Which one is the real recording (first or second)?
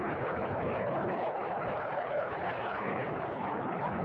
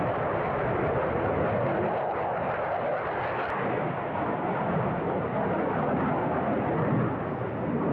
second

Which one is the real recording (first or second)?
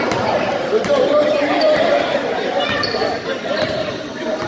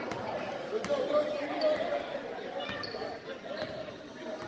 second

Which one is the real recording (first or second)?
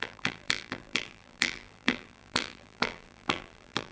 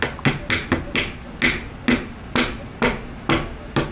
second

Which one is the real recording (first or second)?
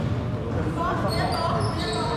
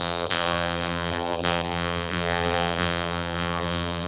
first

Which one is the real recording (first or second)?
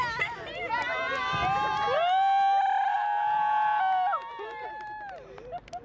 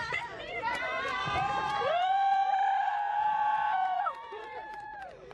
first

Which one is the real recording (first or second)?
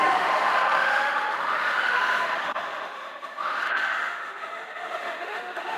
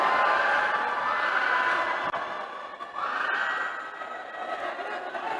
second